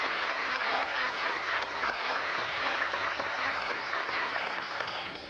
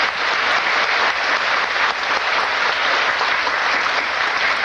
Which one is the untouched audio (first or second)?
second